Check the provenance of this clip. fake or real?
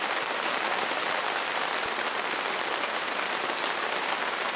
real